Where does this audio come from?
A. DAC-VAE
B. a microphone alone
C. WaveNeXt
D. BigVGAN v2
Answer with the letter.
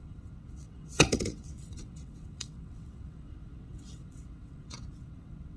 C